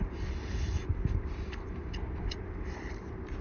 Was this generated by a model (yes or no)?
yes